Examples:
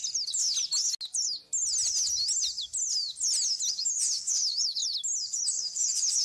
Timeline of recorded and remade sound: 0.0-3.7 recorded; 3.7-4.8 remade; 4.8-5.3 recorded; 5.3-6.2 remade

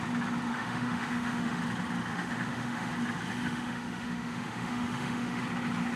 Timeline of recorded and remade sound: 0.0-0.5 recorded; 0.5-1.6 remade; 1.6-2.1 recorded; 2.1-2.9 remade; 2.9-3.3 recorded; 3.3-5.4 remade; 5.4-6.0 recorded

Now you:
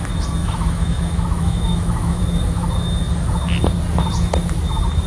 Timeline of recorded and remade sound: 0.0-0.4 recorded; 0.4-2.2 remade; 2.2-5.1 recorded

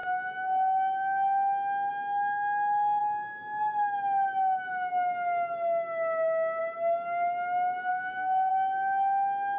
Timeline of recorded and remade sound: 0.0-7.9 recorded; 7.9-8.5 remade; 8.5-9.6 recorded

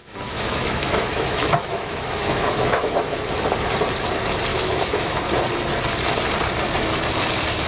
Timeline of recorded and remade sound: 0.0-3.2 remade; 3.2-4.5 recorded; 4.5-5.2 remade; 5.2-7.7 recorded